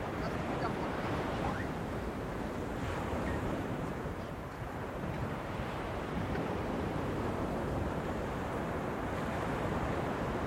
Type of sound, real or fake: fake